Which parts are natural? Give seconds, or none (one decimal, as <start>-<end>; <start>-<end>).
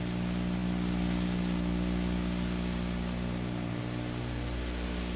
0.0-5.2